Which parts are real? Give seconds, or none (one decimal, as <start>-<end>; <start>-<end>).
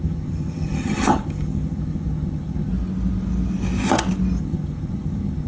2.7-4.4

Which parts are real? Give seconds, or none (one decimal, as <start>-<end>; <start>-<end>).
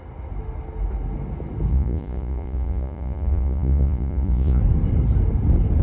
0.0-1.7; 4.6-5.8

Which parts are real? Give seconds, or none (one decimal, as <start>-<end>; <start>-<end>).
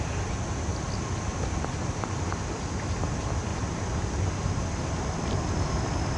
0.0-6.2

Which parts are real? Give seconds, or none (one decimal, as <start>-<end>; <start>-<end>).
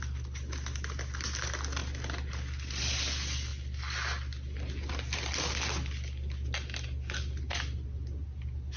0.0-8.8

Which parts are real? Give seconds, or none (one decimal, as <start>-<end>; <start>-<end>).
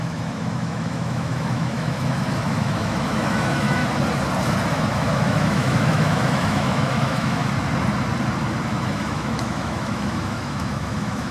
3.8-4.7; 7.5-8.7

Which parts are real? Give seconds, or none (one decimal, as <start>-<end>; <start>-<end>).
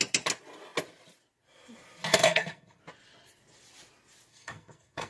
0.0-2.1; 2.8-4.3